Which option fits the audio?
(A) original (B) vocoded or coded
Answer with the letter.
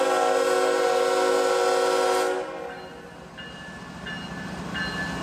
A